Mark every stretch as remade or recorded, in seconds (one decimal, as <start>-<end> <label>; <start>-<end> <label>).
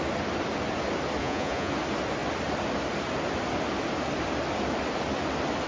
0.0-1.2 recorded; 1.2-1.7 remade; 1.7-5.7 recorded